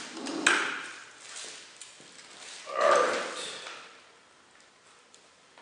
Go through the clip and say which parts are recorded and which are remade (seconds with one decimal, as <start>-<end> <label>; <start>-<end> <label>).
0.0-5.6 recorded